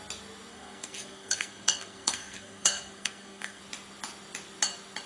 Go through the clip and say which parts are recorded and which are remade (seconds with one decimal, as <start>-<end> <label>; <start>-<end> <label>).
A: 0.0-0.5 recorded; 0.5-3.6 remade; 3.6-5.1 recorded